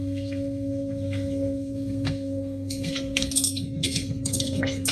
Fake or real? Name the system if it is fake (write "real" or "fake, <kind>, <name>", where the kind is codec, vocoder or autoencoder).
fake, codec, SNAC